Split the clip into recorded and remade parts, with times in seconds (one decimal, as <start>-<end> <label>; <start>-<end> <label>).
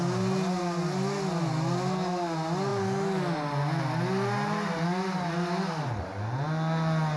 0.0-7.2 recorded